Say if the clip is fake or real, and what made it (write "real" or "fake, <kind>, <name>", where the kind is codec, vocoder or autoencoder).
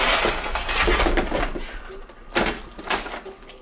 real